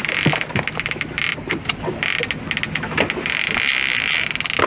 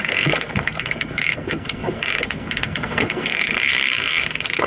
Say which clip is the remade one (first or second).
second